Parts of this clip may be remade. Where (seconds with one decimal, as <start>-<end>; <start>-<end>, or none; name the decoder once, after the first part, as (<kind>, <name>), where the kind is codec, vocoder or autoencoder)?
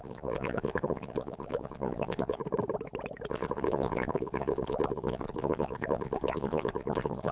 0.0-2.4 (vocoder, Vocos); 3.3-7.3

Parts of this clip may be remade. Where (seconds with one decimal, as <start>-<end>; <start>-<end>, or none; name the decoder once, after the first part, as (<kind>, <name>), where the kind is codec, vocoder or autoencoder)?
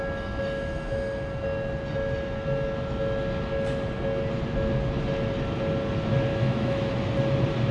6.3-6.9 (autoencoder, DAC-VAE)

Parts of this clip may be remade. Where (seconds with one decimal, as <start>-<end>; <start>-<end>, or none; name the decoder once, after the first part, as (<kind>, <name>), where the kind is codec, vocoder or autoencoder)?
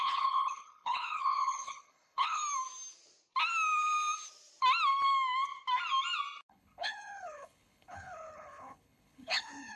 0.0-2.4 (codec, HILCodec); 6.5-9.8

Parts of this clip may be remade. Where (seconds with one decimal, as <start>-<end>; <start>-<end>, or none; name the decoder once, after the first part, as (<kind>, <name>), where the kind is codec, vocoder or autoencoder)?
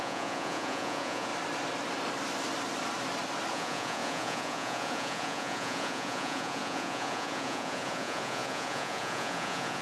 0.0-1.3 (vocoder, Vocos); 3.5-9.8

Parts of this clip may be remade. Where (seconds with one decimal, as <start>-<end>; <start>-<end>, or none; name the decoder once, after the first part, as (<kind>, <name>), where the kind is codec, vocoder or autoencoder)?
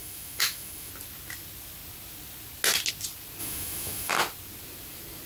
0.0-0.9 (autoencoder, DAC-VAE); 3.4-4.1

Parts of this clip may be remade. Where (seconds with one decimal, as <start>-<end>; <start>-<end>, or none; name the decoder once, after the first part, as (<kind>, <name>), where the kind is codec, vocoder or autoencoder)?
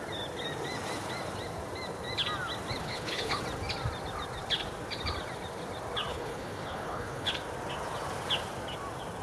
2.8-3.4 (codec, HILCodec); 6.1-7.3